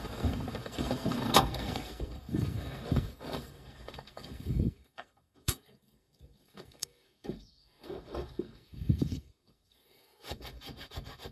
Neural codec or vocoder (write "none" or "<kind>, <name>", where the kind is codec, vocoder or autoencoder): codec, SNAC